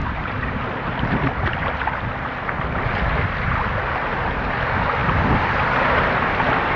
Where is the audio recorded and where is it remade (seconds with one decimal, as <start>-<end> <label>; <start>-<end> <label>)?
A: 0.0-0.6 remade; 0.6-6.8 recorded